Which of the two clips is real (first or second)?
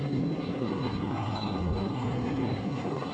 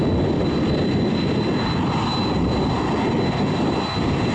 second